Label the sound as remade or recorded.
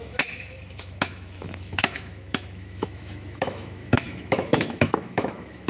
remade